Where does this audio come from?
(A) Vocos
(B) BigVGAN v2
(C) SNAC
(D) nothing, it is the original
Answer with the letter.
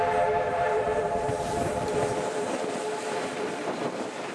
B